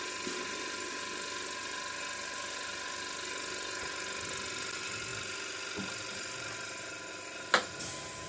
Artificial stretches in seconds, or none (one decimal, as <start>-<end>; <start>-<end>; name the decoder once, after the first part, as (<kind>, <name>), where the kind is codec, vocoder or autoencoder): none

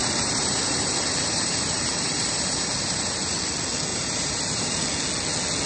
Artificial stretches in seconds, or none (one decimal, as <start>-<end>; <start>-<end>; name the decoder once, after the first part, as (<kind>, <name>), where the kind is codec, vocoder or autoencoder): 0.0-3.4 (vocoder, BigVGAN v2); 3.9-4.8

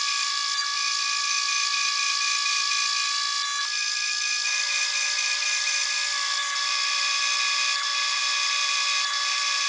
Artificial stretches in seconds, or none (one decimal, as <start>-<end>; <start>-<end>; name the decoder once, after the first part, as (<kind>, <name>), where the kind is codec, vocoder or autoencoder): 0.0-2.7 (vocoder, BigVGAN v2); 3.6-9.7

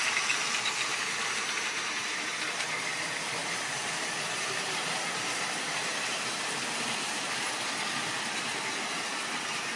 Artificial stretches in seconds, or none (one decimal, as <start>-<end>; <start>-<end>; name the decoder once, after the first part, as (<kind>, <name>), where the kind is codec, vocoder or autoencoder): 0.9-2.9 (vocoder, BigVGAN v2); 3.4-7.5